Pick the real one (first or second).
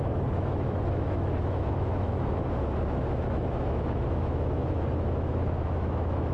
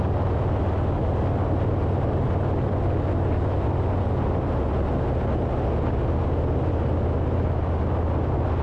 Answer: second